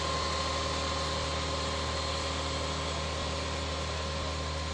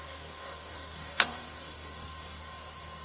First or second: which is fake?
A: second